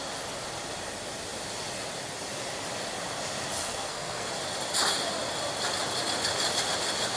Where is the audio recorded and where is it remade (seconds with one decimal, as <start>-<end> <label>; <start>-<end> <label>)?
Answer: 0.0-3.6 recorded; 3.6-4.3 remade; 4.3-7.2 recorded